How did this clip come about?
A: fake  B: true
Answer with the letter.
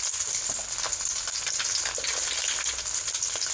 B